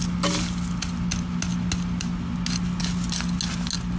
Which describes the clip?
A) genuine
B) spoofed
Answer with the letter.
A